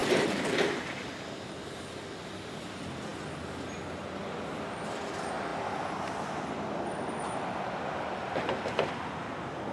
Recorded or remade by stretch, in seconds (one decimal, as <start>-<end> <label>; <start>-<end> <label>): 0.0-1.1 remade; 1.1-9.7 recorded